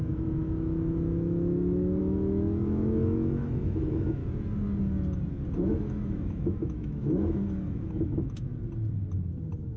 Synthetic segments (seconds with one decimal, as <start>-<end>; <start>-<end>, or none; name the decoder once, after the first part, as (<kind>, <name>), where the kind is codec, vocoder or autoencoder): 0.0-4.2 (autoencoder, DAC-VAE); 5.8-8.5